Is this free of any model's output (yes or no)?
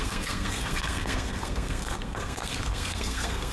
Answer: no